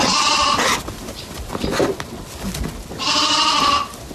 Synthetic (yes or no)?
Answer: no